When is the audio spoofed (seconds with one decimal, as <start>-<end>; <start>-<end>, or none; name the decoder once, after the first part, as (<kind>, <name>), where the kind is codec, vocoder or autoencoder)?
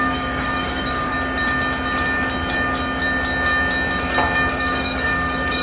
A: 0.0-1.1 (codec, DAC); 4.5-5.6